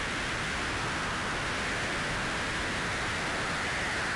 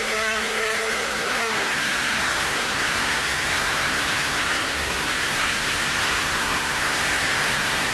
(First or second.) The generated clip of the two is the second